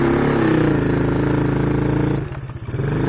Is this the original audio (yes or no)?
yes